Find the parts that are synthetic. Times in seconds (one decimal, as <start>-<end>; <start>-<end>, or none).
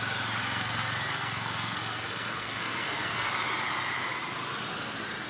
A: 0.4-3.3